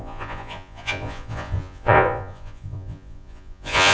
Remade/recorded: remade